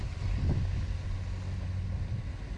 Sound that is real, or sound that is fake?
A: real